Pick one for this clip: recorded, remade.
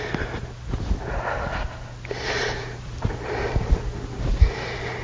recorded